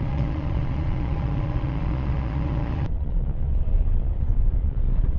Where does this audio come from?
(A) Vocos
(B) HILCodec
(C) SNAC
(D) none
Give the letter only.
A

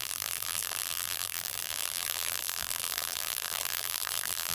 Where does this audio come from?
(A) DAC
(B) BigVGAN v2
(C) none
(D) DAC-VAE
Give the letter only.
B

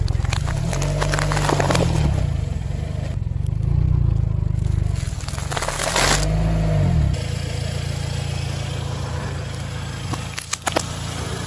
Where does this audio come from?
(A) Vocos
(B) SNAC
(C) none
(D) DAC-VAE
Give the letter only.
C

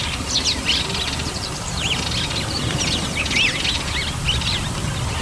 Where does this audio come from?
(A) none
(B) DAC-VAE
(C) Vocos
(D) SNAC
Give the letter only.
A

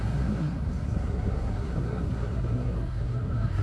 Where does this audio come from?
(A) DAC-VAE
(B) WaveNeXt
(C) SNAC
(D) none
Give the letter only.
C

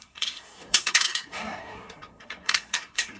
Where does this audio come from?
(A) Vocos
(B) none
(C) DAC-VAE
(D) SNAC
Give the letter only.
D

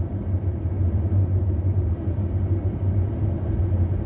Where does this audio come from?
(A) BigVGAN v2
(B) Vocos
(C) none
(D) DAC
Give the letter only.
C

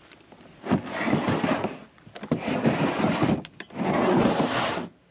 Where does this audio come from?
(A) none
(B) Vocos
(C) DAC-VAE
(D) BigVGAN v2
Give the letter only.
A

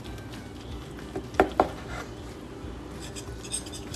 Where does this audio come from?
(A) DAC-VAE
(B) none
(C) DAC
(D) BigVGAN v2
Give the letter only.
B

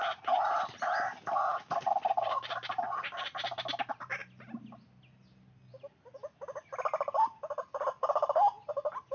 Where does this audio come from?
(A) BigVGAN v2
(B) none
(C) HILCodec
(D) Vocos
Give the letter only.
B